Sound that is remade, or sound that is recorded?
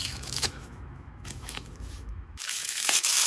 remade